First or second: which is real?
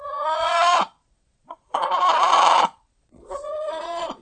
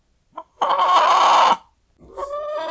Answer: second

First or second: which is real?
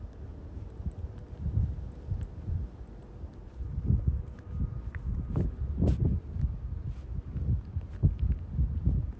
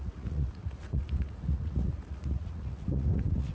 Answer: first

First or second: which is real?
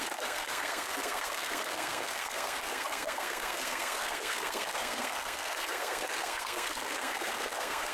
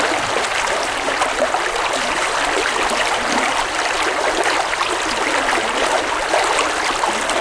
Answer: second